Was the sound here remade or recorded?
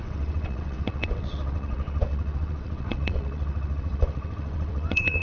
remade